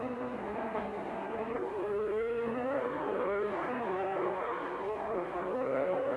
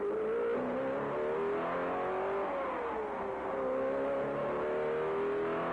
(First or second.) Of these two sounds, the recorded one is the second